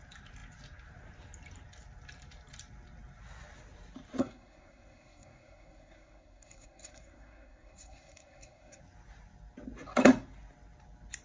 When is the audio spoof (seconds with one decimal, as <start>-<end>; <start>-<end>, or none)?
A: 4.2-8.8